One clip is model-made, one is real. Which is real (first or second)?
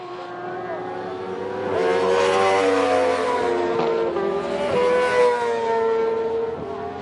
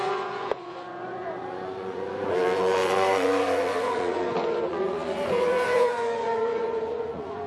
first